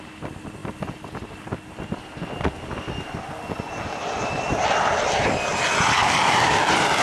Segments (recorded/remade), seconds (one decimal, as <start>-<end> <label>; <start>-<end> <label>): 0.0-5.9 recorded; 5.9-6.6 remade; 6.6-7.0 recorded

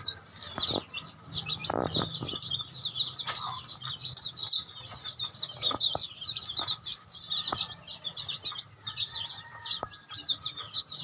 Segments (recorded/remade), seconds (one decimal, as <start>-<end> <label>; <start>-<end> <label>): 0.0-1.6 remade; 1.6-5.0 recorded; 5.0-6.9 remade; 6.9-9.7 recorded; 9.7-11.0 remade

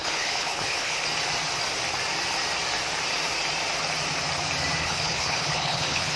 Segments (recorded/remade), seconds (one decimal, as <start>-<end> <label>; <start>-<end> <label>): 0.0-1.0 remade; 1.0-4.8 recorded; 4.8-6.2 remade